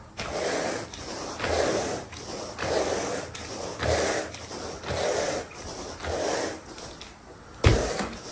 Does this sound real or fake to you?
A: real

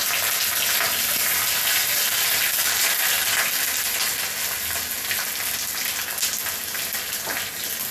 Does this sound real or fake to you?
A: real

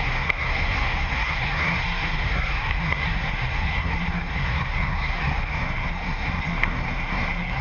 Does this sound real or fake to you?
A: fake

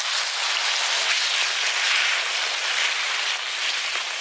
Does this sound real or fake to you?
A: real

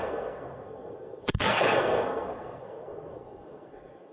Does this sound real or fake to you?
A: fake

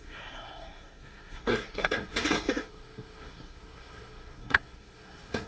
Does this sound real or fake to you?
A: fake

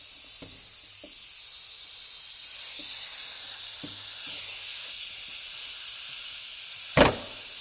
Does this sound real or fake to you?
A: real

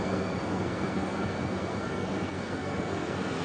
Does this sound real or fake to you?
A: fake